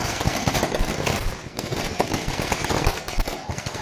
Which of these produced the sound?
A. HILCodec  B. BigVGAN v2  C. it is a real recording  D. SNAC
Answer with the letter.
D